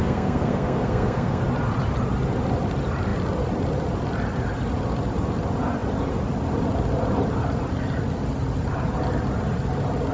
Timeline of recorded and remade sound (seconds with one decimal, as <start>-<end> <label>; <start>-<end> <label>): 0.0-1.4 remade; 1.4-10.1 recorded